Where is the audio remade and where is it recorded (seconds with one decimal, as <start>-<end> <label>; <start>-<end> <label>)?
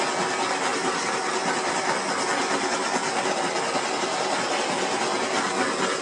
0.0-0.7 recorded; 0.7-1.3 remade; 1.3-6.0 recorded